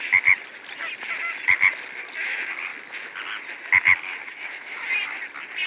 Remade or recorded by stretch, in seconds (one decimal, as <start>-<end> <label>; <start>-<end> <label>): 0.0-4.3 recorded; 4.3-4.8 remade; 4.8-5.7 recorded

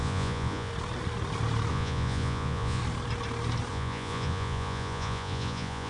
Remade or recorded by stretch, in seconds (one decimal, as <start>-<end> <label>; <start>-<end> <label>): 0.0-0.7 remade; 0.7-1.7 recorded; 1.7-2.8 remade; 2.8-3.7 recorded; 3.7-5.9 remade

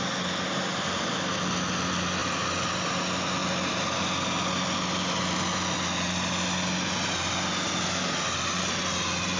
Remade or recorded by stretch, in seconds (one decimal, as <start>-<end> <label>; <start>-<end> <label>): 0.0-9.4 recorded

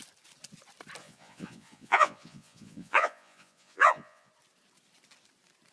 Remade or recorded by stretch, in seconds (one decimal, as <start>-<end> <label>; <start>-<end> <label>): 0.0-1.0 recorded; 1.0-4.3 remade; 4.3-5.7 recorded

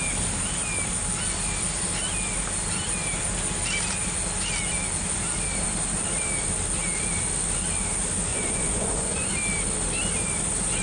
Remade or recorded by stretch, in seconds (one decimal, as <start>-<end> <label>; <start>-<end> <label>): 0.0-8.3 recorded; 8.3-9.3 remade; 9.3-10.8 recorded